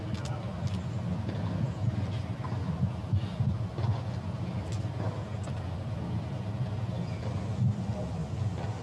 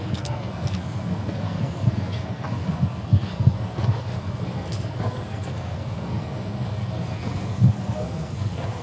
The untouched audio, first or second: first